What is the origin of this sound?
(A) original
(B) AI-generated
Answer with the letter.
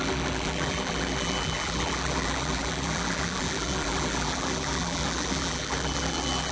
B